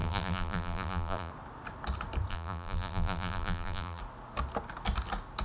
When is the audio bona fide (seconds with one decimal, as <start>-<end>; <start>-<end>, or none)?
1.3-2.3; 4.0-5.4